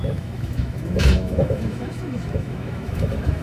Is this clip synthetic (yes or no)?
yes